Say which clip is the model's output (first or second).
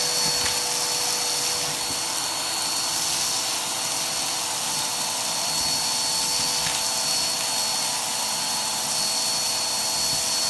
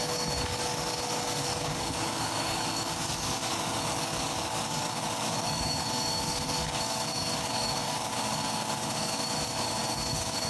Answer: second